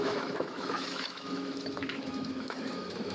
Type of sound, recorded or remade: remade